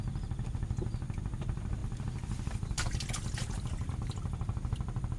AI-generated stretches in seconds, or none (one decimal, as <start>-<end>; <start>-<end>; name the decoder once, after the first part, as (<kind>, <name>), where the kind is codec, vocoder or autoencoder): 1.8-3.9 (vocoder, BigVGAN v2)